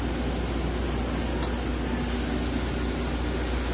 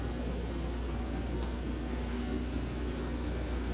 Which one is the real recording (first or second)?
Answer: first